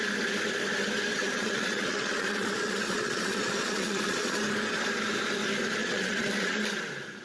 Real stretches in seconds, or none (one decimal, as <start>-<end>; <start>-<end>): 0.0-1.2; 4.4-5.8; 6.6-7.2